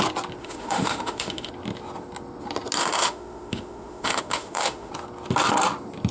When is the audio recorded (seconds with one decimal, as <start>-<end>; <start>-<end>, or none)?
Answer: 0.0-0.4; 1.5-2.8; 4.9-6.1